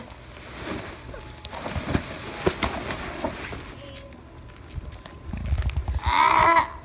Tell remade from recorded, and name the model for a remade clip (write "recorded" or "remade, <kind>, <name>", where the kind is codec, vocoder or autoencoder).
recorded